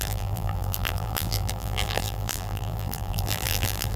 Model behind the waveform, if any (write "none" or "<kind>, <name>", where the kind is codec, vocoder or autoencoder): vocoder, BigVGAN v2